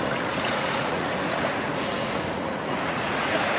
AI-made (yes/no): yes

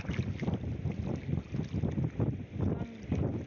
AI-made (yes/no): no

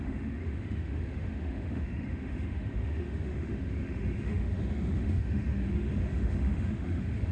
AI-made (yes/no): yes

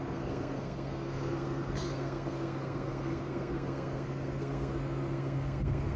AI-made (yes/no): yes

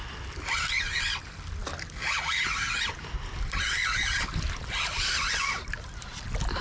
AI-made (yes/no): no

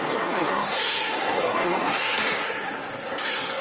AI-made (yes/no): yes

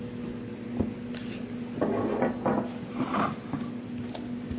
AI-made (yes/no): no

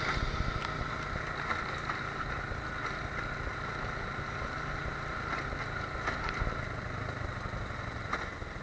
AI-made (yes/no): no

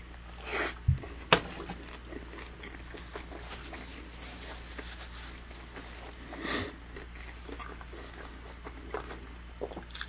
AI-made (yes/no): no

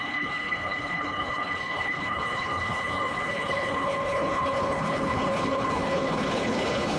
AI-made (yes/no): yes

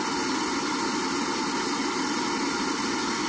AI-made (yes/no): no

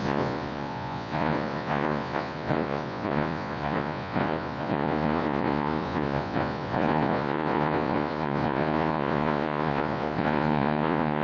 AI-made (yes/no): yes